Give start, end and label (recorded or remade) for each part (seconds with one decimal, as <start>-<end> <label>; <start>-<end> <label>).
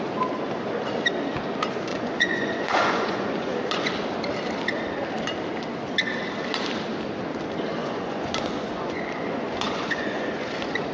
0.0-1.9 recorded; 1.9-3.9 remade; 3.9-7.8 recorded; 7.8-10.9 remade